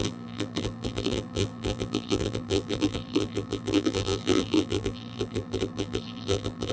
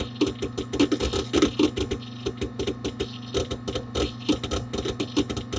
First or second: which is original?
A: second